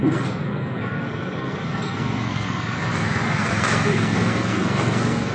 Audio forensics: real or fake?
fake